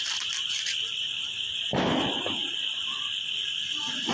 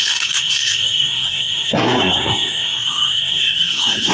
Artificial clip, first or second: second